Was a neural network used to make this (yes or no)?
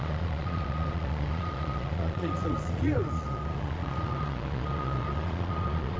yes